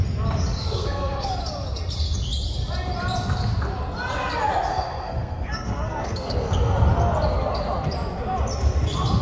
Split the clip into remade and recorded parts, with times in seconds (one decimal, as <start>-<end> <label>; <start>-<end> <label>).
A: 0.0-0.6 recorded; 0.6-1.3 remade; 1.3-4.7 recorded; 4.7-6.5 remade; 6.5-9.2 recorded